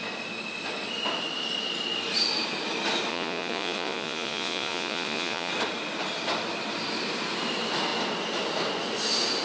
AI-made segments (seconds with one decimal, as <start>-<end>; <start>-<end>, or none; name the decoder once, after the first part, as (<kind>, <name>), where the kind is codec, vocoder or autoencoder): 3.1-5.5 (vocoder, Vocos)